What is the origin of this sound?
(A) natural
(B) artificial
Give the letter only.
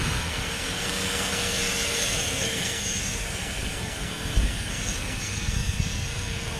B